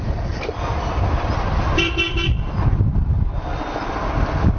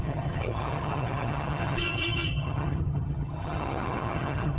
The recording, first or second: first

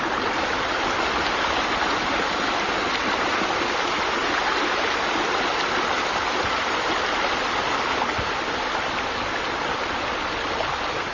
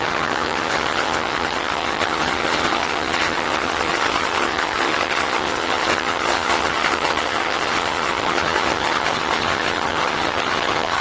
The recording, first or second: first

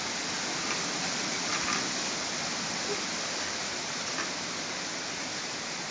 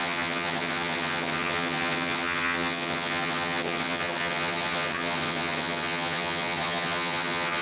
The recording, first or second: first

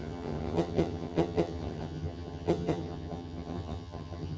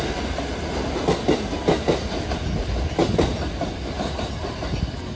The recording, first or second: second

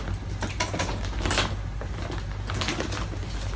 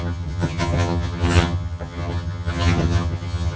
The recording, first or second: first